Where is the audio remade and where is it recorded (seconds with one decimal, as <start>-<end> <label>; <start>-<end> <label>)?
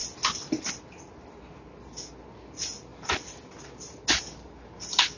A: 0.0-5.2 recorded